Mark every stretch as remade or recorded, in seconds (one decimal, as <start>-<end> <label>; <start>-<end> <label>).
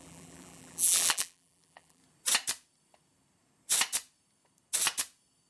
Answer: 0.0-2.0 remade; 2.0-5.5 recorded